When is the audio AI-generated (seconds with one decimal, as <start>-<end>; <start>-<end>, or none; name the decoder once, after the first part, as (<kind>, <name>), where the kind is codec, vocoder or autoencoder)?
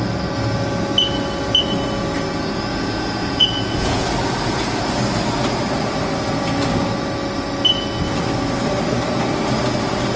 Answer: 2.7-4.1 (vocoder, Vocos)